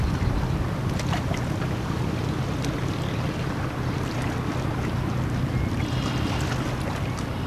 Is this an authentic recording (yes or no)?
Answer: yes